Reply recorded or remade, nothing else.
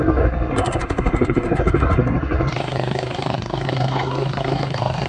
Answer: remade